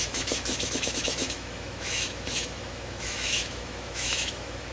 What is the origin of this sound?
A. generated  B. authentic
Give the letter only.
A